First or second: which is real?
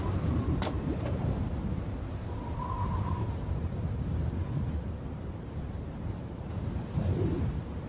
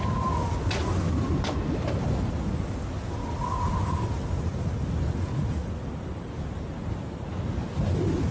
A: second